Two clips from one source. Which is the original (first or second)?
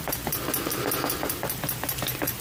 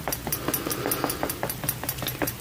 second